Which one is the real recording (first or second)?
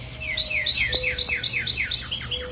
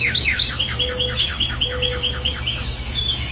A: first